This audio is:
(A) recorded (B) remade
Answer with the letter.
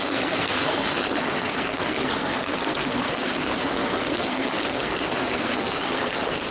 B